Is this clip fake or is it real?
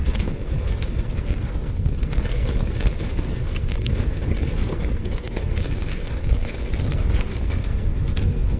fake